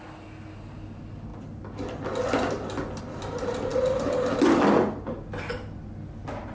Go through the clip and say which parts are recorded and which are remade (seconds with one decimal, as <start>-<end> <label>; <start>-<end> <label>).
0.0-6.5 recorded